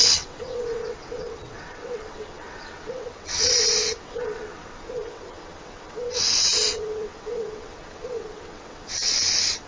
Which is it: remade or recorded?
remade